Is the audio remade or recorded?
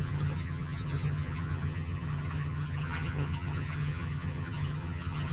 remade